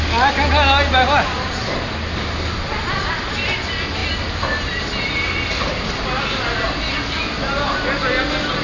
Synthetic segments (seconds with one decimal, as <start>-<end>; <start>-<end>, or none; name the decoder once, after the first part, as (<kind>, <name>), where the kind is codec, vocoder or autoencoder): none